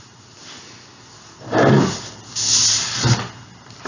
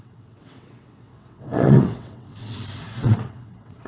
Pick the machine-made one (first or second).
second